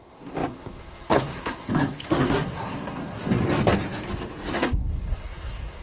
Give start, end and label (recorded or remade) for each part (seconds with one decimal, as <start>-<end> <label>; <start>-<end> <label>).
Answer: 0.0-3.4 remade; 3.4-4.5 recorded; 4.5-5.8 remade